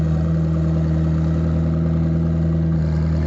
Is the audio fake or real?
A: real